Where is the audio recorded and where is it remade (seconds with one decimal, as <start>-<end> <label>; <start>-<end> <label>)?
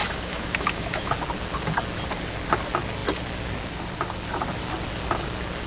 0.0-1.1 remade; 1.1-5.7 recorded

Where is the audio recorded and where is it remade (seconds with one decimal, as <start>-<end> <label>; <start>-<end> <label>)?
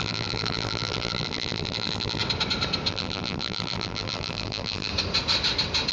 0.0-2.2 remade; 2.2-2.9 recorded; 2.9-4.9 remade; 4.9-5.9 recorded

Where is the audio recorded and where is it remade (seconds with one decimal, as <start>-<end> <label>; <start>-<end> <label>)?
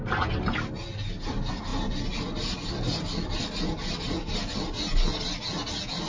0.0-6.1 recorded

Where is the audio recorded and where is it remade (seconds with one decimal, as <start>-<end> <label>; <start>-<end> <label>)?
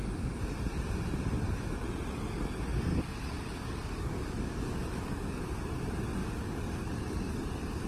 0.0-2.9 recorded; 2.9-5.4 remade; 5.4-6.2 recorded; 6.2-7.3 remade; 7.3-7.9 recorded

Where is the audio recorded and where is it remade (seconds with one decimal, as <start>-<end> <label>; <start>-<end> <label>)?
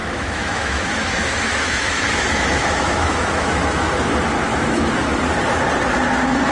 0.0-3.9 remade; 3.9-4.5 recorded; 4.5-5.2 remade; 5.2-6.5 recorded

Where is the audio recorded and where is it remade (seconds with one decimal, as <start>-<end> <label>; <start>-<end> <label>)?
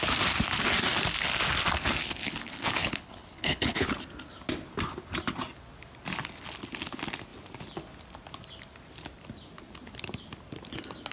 0.0-2.0 recorded; 2.0-3.9 remade; 3.9-11.1 recorded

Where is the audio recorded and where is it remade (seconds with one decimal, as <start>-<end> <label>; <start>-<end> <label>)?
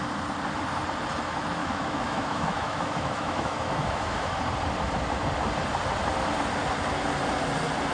0.0-1.6 recorded; 1.6-4.4 remade; 4.4-7.9 recorded